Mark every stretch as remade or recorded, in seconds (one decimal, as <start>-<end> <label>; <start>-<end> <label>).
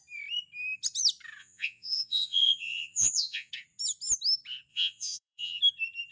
0.0-1.4 recorded; 1.4-3.5 remade; 3.5-4.7 recorded; 4.7-5.6 remade; 5.6-6.1 recorded